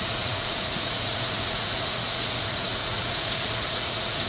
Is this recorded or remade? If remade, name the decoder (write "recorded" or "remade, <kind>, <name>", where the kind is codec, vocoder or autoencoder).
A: remade, vocoder, Vocos